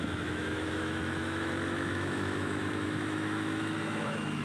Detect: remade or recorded remade